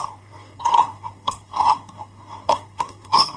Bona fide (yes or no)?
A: no